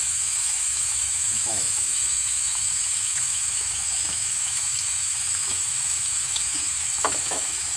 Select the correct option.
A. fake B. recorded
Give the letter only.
A